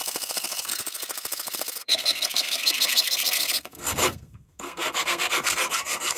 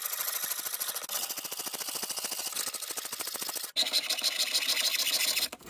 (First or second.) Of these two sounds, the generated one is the first